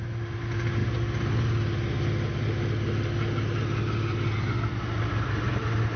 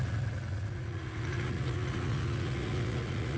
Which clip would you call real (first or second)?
first